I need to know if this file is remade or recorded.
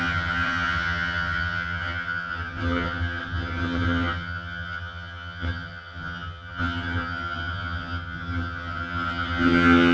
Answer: remade